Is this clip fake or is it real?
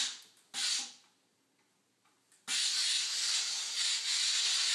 real